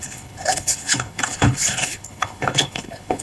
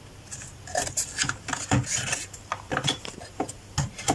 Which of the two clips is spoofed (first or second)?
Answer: first